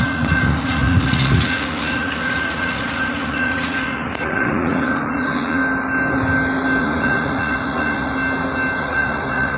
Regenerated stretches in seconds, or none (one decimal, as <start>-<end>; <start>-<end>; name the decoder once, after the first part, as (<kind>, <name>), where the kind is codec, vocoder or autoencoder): 0.0-5.6 (vocoder, Vocos); 6.8-8.1; 8.8-9.6